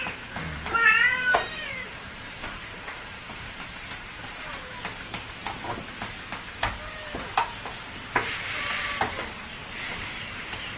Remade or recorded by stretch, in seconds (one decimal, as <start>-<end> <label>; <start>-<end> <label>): 0.0-4.6 remade; 4.6-8.5 recorded; 8.5-10.8 remade